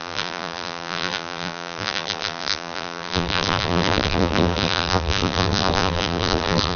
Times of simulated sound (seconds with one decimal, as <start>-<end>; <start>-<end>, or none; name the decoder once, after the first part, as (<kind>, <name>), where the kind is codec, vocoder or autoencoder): 0.0-6.8 (vocoder, BigVGAN v2)